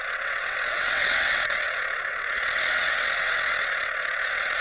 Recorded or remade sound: remade